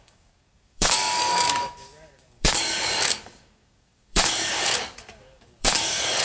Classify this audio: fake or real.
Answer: fake